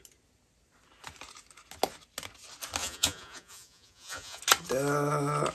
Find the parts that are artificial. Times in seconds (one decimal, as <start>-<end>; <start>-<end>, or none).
2.8-4.4